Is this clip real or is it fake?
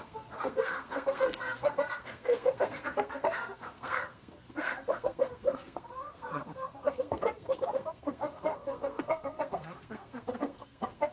fake